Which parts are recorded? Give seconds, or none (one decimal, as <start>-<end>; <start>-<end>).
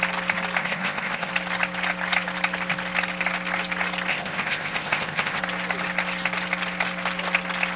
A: 0.0-0.6; 1.3-4.1; 5.4-7.8